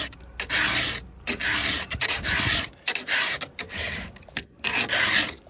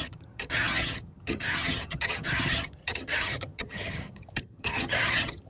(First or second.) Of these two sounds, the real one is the first